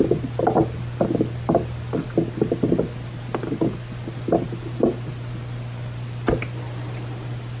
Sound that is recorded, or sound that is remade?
recorded